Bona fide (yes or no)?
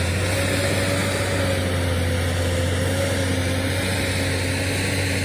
yes